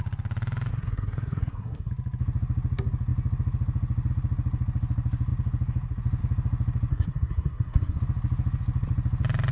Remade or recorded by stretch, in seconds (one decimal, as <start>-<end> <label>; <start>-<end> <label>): 0.0-0.7 recorded; 0.7-1.9 remade; 1.9-6.9 recorded; 6.9-8.0 remade; 8.0-9.5 recorded